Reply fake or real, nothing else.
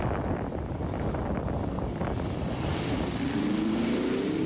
fake